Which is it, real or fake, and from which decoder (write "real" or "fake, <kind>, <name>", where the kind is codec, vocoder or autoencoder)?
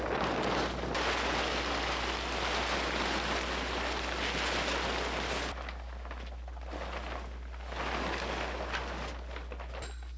real